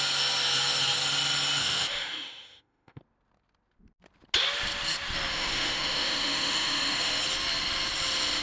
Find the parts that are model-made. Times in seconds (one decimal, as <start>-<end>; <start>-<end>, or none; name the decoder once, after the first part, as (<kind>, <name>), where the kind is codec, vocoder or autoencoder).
1.6-3.0 (autoencoder, DAC-VAE); 5.3-7.2